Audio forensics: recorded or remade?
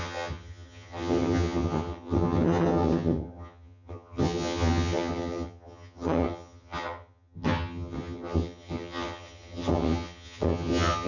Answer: remade